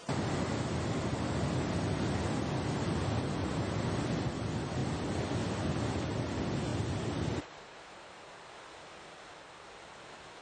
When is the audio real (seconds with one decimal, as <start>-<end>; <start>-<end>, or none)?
0.0-10.4